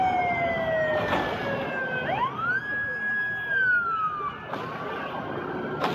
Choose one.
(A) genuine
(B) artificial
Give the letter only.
A